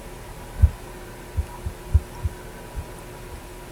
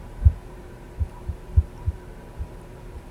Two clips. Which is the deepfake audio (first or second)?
second